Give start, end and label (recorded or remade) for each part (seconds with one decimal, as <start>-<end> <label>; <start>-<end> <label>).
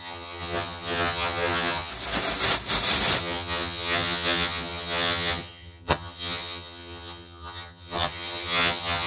0.0-1.9 remade; 1.9-3.2 recorded; 3.2-9.1 remade